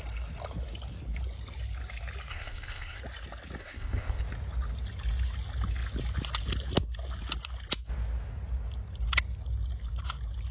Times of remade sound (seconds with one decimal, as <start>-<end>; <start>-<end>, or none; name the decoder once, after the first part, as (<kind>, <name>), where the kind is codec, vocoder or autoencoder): 2.3-3.0 (codec, ZipCodec); 3.6-4.2